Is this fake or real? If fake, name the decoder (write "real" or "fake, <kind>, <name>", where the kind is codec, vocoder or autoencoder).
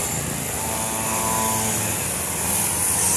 real